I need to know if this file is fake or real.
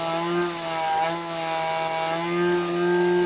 real